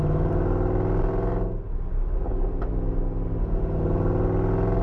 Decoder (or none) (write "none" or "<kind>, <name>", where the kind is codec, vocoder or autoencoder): none